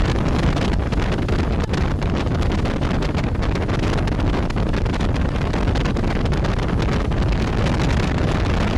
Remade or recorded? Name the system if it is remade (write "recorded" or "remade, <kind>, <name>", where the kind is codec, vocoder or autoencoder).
recorded